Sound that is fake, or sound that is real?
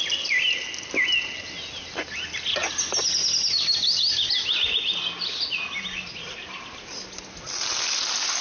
real